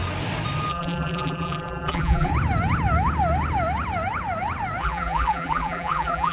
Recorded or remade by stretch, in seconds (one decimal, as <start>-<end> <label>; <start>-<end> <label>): 0.0-0.7 recorded; 0.7-2.3 remade; 2.3-4.8 recorded; 4.8-6.3 remade